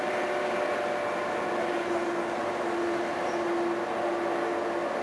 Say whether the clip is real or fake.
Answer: real